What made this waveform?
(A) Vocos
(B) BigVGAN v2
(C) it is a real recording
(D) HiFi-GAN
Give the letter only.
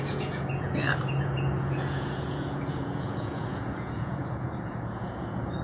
A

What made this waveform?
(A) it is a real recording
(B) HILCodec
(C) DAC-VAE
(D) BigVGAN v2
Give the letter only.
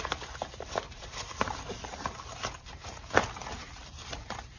D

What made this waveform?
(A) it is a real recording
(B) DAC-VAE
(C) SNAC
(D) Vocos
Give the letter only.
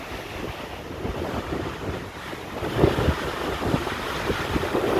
A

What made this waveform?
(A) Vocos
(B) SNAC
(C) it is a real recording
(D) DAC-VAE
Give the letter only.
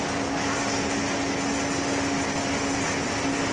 C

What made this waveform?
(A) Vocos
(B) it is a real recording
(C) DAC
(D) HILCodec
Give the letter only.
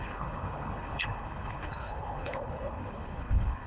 D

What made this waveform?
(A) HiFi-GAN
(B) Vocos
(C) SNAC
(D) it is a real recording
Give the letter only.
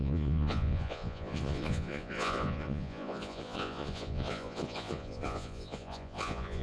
B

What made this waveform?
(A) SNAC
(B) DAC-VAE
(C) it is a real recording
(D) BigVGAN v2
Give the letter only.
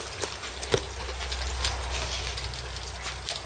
C